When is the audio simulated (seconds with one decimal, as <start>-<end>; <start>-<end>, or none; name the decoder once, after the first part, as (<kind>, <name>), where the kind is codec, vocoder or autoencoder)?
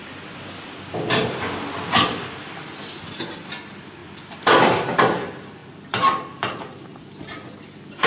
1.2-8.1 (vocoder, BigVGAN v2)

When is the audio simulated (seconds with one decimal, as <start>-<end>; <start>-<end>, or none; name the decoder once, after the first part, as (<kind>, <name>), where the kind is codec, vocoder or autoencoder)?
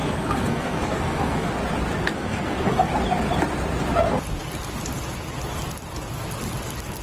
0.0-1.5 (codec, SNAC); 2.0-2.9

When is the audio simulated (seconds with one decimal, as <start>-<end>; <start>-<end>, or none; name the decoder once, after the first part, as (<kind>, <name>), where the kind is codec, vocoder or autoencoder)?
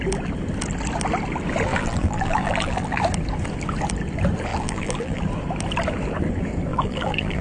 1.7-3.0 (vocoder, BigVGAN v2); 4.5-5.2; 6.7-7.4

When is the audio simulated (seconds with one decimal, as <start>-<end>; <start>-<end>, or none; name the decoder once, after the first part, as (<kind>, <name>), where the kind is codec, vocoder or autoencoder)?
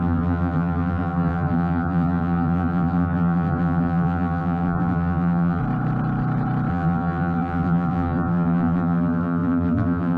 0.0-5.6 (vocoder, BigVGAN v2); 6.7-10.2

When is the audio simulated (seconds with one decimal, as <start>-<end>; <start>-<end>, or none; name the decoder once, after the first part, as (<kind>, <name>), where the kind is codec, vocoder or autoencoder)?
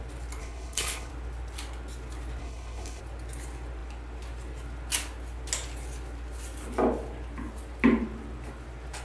0.4-1.1 (codec, HILCodec); 2.4-3.0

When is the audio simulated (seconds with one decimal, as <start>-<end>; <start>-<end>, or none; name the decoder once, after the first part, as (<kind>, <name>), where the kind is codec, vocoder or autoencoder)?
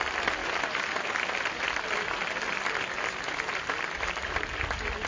none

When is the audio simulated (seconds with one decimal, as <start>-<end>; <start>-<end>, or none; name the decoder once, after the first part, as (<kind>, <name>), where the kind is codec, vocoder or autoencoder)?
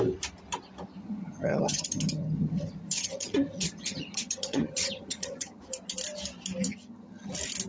1.0-5.6 (vocoder, HiFi-GAN); 6.7-7.3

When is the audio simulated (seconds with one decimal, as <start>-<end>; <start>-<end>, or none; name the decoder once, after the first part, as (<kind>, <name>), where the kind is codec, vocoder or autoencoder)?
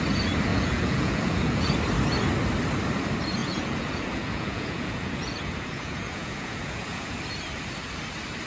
0.5-1.7 (vocoder, Vocos); 3.4-7.1